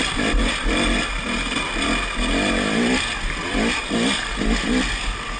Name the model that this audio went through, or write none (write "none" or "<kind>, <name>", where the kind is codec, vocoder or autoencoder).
none